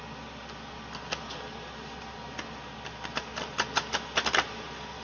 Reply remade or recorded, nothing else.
recorded